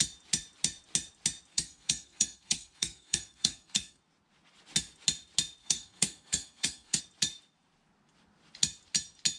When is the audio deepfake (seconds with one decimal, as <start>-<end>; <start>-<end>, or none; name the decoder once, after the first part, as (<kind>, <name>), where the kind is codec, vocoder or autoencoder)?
1.5-4.0 (codec, SNAC); 5.6-7.0